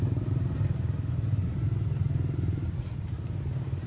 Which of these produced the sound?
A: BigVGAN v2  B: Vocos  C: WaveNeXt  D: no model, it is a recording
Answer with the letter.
D